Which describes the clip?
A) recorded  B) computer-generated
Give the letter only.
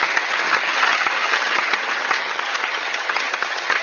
B